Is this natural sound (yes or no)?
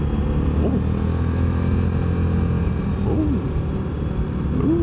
yes